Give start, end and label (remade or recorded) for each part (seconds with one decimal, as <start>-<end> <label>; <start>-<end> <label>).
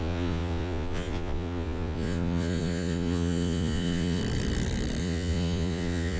0.0-4.2 remade; 4.2-5.0 recorded; 5.0-6.2 remade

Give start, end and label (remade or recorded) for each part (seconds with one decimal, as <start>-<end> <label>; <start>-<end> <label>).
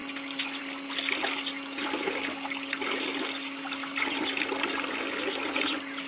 0.0-6.1 recorded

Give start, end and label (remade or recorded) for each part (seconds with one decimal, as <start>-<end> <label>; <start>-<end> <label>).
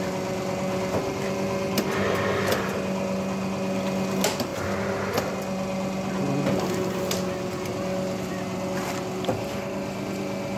0.0-10.6 recorded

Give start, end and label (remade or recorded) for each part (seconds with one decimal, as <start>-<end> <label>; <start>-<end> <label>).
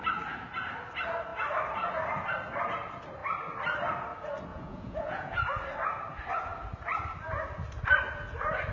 0.0-4.5 recorded; 4.5-5.4 remade; 5.4-8.7 recorded